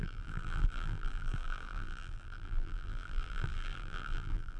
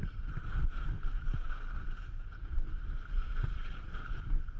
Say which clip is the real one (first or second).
second